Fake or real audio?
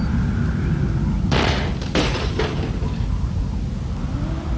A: real